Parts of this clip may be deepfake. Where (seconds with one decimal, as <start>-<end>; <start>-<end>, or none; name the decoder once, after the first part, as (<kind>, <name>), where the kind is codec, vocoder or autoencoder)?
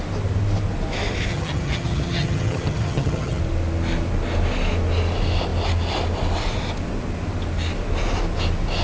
1.3-3.4 (vocoder, HiFi-GAN)